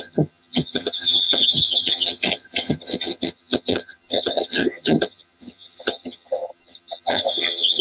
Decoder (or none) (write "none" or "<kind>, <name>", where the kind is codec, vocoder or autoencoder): vocoder, HiFi-GAN